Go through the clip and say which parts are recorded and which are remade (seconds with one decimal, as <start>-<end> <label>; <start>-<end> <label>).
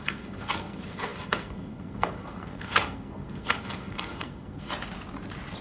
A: 0.0-4.7 remade; 4.7-5.6 recorded